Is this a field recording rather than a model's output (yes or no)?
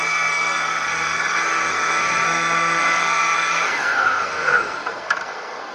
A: no